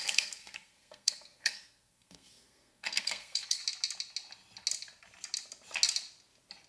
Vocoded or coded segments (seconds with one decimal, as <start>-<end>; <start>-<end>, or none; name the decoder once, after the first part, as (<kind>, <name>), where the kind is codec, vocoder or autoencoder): 0.0-3.6 (codec, SNAC)

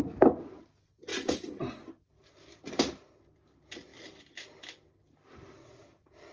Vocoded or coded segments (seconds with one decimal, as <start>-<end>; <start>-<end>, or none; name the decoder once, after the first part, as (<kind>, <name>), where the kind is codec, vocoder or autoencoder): none